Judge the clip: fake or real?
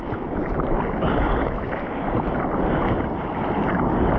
real